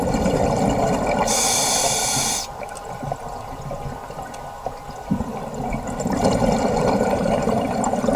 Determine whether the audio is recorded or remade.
recorded